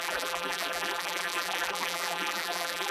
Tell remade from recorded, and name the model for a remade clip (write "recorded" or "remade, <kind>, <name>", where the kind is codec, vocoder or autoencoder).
remade, vocoder, BigVGAN v2